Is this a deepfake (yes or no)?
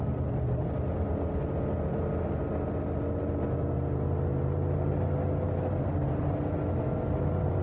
no